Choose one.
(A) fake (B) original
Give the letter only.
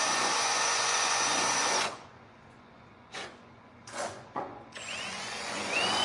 A